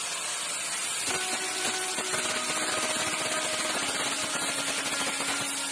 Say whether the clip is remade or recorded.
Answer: recorded